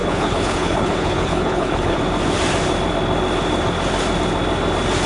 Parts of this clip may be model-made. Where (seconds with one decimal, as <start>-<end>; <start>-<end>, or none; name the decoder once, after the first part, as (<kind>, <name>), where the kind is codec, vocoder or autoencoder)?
0.0-2.0 (codec, HILCodec)